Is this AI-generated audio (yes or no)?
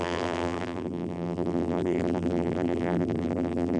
yes